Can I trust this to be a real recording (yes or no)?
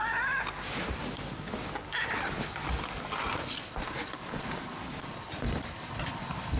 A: yes